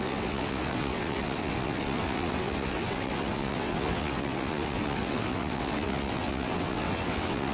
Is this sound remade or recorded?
remade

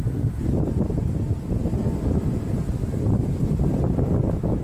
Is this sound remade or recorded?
recorded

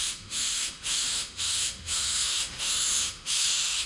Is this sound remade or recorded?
remade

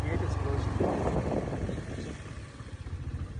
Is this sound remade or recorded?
recorded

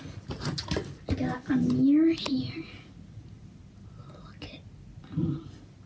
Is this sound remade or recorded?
recorded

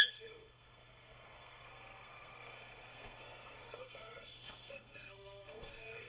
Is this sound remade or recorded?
remade